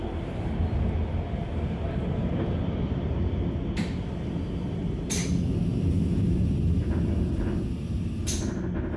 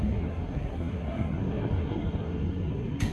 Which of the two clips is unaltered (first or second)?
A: first